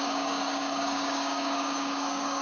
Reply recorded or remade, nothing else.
remade